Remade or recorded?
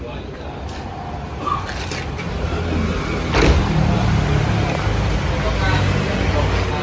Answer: recorded